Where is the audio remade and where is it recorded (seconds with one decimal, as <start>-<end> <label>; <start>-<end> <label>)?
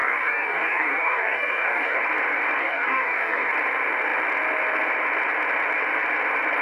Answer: 0.0-2.0 remade; 2.0-2.6 recorded; 2.6-3.5 remade; 3.5-6.6 recorded